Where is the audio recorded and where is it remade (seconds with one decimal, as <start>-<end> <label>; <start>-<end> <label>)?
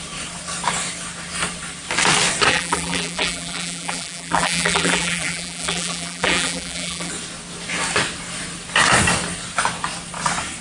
0.0-2.5 recorded; 2.5-7.1 remade; 7.1-10.6 recorded